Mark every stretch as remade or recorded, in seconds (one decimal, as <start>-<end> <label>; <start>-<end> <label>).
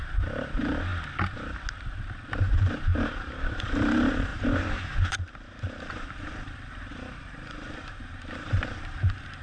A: 0.0-0.9 remade; 0.9-2.3 recorded; 2.3-9.4 remade